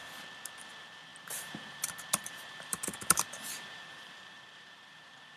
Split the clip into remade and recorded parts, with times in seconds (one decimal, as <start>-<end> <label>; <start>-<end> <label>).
0.0-0.7 recorded; 0.7-5.4 remade